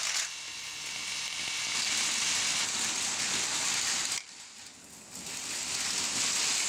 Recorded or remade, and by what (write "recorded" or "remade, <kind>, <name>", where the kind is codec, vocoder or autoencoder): recorded